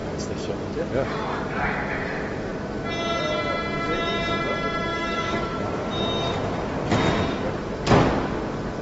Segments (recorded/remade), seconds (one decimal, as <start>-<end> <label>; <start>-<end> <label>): 0.0-4.9 recorded; 4.9-5.6 remade; 5.6-8.8 recorded